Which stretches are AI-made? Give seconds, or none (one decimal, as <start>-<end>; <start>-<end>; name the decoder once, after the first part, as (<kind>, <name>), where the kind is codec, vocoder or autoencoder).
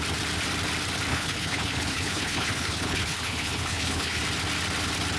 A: 1.1-4.2 (codec, HILCodec)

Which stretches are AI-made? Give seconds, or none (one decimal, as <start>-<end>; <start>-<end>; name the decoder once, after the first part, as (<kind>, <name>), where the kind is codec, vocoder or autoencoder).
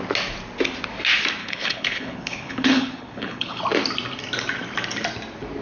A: 1.4-3.6 (codec, HILCodec)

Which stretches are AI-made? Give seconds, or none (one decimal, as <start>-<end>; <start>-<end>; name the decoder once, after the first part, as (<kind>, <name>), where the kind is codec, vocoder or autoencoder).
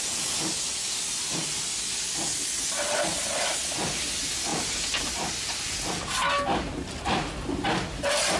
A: none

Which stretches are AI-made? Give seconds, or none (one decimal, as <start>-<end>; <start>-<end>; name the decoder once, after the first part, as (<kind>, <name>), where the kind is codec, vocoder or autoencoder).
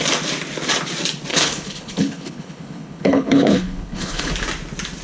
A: 1.3-4.3 (codec, HILCodec)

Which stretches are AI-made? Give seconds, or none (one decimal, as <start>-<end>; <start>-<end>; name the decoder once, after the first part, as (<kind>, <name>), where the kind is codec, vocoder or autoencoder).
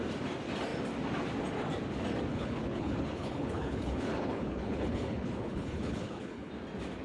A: 2.3-6.5 (codec, HILCodec)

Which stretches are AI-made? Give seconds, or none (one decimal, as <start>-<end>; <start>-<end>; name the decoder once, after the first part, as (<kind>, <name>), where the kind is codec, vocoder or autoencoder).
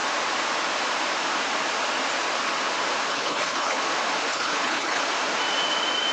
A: 3.1-3.8 (codec, HILCodec); 4.3-5.0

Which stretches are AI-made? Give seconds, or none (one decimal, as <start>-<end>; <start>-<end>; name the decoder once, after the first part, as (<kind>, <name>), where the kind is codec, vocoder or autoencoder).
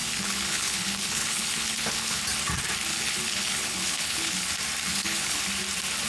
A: 0.0-2.2 (codec, HILCodec); 2.9-4.5; 4.9-5.4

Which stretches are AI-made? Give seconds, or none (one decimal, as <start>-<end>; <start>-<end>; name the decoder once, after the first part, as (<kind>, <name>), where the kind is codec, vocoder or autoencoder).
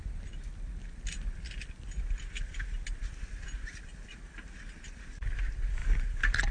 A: none